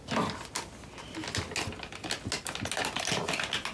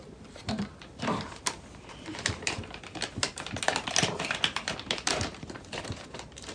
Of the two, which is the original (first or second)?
first